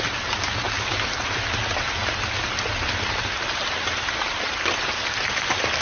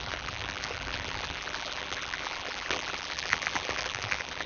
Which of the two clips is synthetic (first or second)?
second